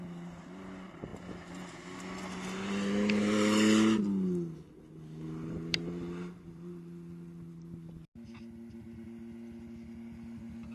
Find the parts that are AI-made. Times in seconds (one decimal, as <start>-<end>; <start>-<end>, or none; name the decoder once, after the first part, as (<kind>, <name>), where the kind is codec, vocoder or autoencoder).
none